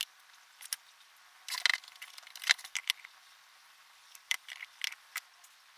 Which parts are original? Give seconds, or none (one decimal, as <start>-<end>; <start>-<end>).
0.0-1.7; 2.6-3.6; 4.7-5.8